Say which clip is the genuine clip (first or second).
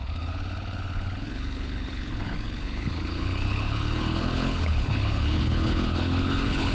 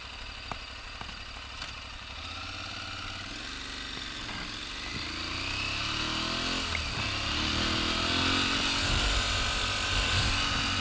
second